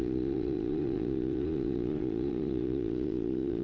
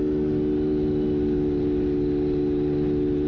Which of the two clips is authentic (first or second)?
second